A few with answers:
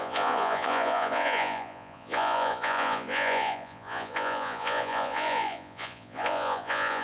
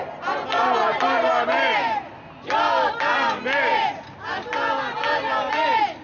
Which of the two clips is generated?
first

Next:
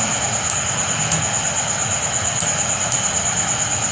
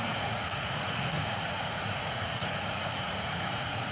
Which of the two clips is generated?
second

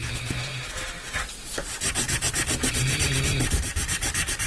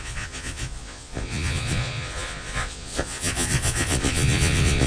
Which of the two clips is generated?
second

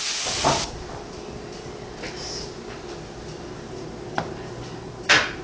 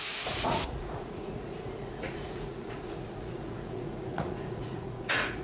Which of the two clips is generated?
second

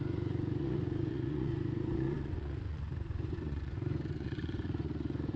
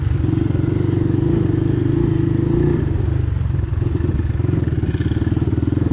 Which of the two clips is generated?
first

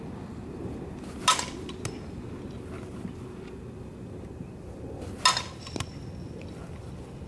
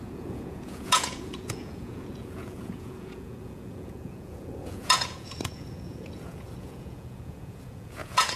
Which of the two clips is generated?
second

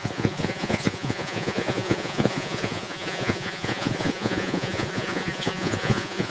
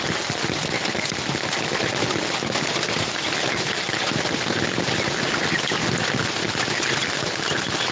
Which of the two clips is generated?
first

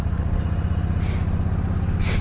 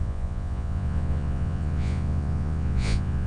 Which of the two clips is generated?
second